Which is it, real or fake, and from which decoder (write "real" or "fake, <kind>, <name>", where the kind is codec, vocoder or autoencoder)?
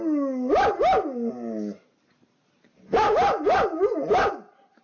real